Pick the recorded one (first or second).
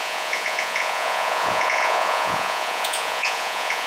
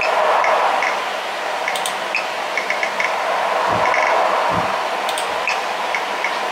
second